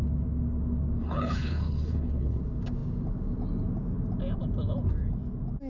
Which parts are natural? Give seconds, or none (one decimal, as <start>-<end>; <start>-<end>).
0.0-1.0; 2.4-5.7